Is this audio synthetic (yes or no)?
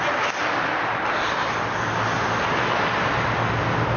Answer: no